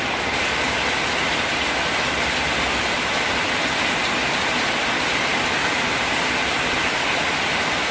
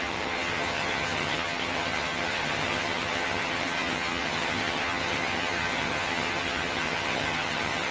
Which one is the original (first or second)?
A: first